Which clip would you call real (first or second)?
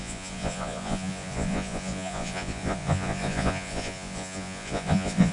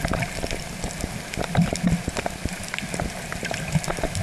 second